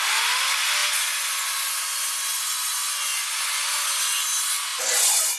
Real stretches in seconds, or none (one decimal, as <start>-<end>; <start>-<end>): 0.0-0.8; 4.0-4.7